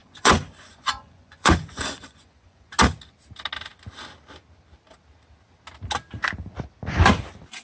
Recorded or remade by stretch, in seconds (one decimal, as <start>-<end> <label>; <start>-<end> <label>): 0.0-2.7 remade; 2.7-7.6 recorded